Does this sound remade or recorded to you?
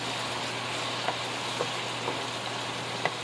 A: recorded